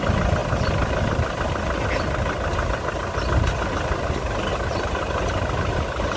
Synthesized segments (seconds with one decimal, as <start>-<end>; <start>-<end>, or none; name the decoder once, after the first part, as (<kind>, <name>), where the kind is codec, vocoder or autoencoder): none